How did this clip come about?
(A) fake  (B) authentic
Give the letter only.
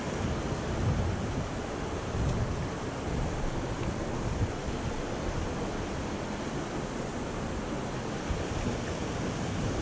B